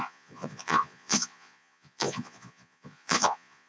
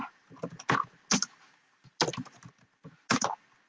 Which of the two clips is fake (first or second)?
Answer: first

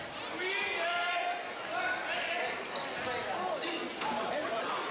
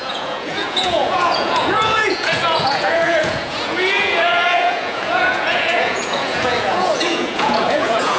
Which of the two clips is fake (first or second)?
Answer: second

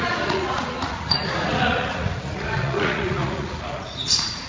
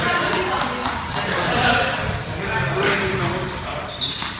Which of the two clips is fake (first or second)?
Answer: first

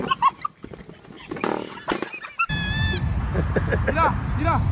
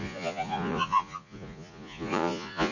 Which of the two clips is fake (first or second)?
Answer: second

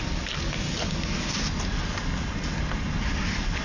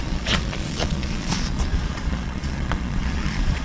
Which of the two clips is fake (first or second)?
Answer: second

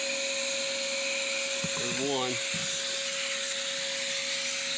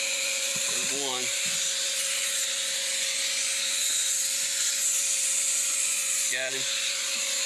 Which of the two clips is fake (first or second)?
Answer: second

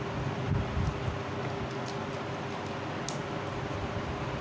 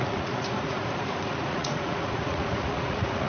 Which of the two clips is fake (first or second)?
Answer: second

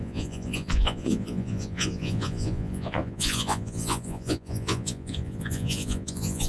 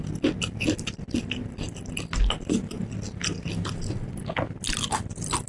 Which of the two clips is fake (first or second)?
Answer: first